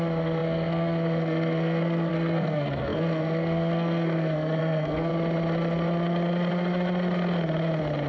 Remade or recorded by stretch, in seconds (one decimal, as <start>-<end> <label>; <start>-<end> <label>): 0.0-5.1 remade; 5.1-8.1 recorded